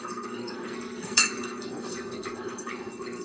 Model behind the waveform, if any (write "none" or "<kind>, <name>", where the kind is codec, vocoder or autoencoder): codec, SNAC